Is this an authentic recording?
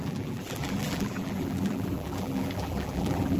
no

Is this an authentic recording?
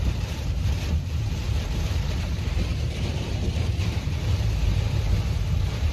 no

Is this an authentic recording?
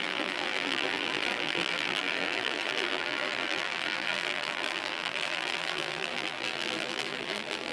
no